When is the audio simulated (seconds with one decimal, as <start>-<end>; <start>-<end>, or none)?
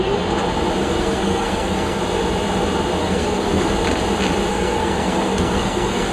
0.8-2.0; 3.0-3.7; 4.5-6.1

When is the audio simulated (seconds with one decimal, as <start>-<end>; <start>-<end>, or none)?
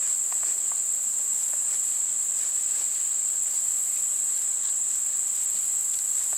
1.3-2.9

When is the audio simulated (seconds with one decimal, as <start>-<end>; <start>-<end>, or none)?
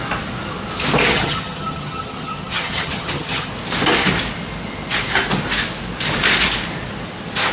1.1-3.5